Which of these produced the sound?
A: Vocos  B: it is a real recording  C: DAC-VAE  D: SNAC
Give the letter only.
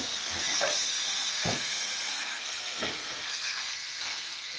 D